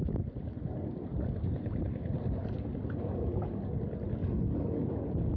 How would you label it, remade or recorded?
recorded